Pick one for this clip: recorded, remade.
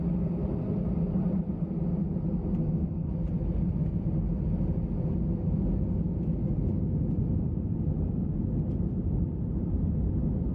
recorded